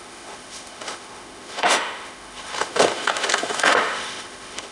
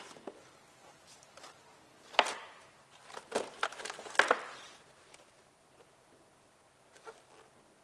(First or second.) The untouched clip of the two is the second